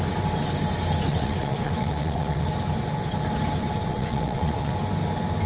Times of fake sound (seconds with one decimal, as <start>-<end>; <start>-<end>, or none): 1.1-2.5; 3.8-4.7